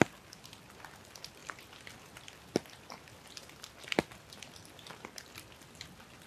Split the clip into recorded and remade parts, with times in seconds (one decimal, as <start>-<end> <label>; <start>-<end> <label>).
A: 0.0-6.3 recorded